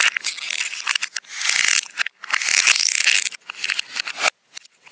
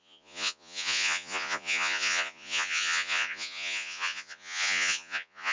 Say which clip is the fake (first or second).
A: second